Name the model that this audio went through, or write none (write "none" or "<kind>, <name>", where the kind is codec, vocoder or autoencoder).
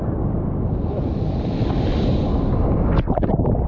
none